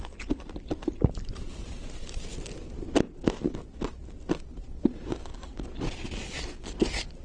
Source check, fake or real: real